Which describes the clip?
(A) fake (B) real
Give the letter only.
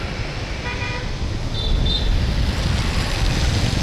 B